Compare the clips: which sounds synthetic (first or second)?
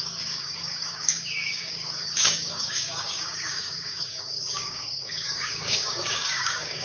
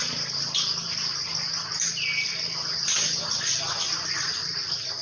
first